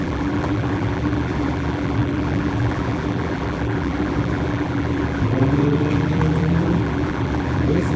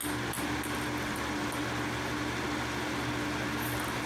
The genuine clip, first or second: second